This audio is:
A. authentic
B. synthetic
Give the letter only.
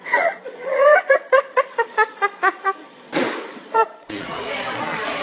B